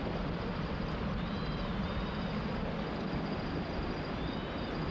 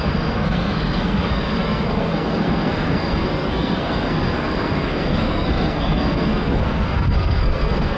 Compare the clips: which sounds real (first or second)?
first